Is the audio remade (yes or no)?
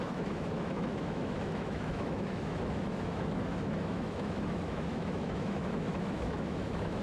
yes